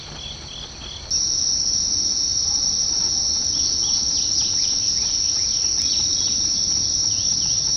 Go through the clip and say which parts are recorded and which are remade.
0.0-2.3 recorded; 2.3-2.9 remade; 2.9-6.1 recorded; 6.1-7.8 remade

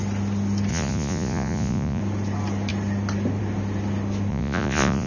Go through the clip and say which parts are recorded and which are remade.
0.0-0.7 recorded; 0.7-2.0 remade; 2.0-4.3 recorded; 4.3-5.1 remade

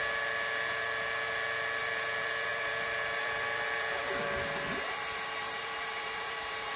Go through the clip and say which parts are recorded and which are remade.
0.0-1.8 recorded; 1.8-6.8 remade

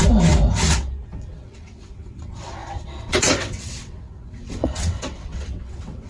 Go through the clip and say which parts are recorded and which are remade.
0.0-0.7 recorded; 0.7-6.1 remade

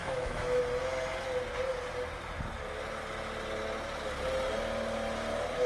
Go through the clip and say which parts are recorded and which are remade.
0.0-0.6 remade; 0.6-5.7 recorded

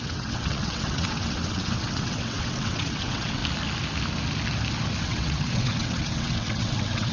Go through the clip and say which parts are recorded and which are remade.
0.0-3.4 remade; 3.4-5.0 recorded; 5.0-7.1 remade

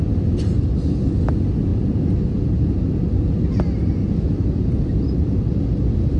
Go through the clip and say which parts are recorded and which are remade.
0.0-6.2 recorded

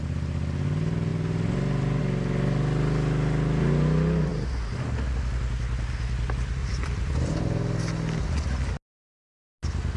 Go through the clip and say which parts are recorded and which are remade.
0.0-1.1 recorded; 1.1-2.0 remade; 2.0-4.3 recorded; 4.3-5.2 remade; 5.2-6.6 recorded; 6.6-7.3 remade; 7.3-10.0 recorded